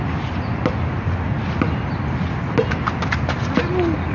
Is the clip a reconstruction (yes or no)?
no